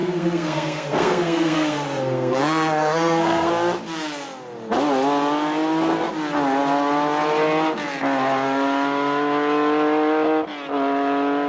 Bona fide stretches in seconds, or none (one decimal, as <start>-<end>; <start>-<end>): 3.5-11.5